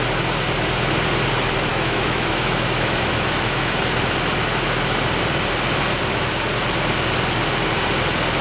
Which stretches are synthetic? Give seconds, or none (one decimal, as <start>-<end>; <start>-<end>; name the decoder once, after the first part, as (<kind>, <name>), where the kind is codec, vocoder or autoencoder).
1.7-3.7 (autoencoder, DAC-VAE)